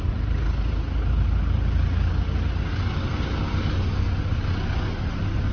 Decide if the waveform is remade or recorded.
recorded